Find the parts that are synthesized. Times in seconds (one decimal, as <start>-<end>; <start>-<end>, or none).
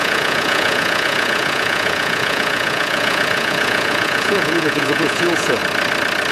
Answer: 0.0-5.6